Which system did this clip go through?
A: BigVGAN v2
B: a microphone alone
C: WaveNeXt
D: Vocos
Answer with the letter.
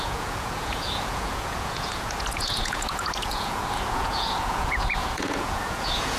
D